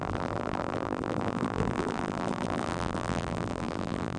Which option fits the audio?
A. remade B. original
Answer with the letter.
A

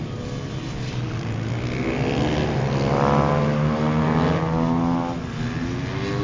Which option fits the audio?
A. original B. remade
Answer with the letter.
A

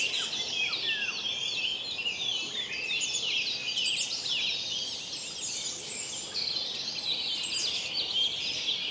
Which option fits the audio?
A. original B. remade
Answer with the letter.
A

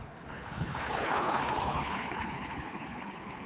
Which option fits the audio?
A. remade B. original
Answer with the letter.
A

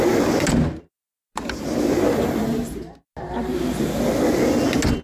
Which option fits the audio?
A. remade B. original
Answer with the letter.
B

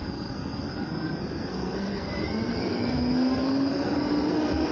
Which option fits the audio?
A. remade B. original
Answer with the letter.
A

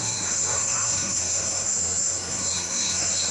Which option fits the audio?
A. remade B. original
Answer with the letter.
A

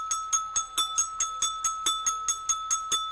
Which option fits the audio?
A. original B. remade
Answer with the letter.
A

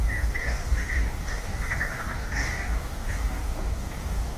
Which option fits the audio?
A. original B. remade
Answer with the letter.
B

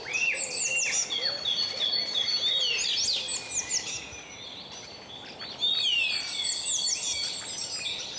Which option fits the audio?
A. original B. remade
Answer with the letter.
A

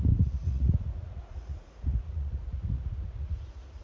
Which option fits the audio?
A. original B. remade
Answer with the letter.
B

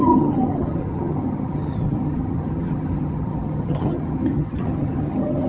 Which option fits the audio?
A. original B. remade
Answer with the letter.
B